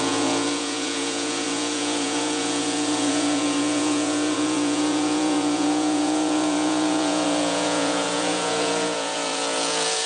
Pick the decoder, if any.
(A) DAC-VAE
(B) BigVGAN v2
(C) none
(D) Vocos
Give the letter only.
D